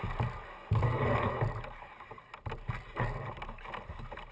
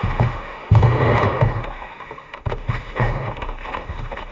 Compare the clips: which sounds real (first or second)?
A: first